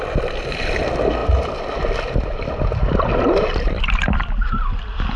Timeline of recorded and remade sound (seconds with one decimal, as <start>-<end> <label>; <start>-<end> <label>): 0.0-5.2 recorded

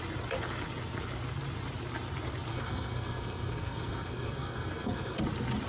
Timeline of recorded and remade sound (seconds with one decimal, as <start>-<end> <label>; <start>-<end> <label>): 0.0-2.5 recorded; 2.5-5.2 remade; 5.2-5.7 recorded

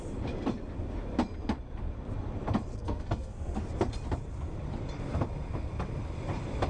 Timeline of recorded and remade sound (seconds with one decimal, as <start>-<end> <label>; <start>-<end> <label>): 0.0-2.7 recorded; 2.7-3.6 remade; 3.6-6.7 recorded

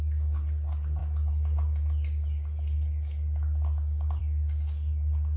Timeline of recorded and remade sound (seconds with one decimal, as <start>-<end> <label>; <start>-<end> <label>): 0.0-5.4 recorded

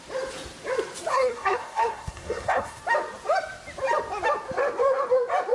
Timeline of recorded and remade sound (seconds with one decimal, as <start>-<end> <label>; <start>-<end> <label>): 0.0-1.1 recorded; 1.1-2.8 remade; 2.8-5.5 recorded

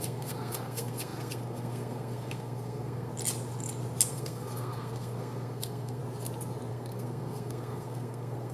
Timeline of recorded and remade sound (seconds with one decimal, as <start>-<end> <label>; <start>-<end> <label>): 0.0-3.1 remade; 3.1-4.1 recorded; 4.1-6.0 remade; 6.0-6.7 recorded; 6.7-8.5 remade